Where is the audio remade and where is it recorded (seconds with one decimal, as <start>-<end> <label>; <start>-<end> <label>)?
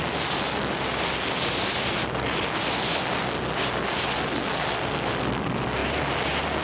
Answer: 0.0-6.6 recorded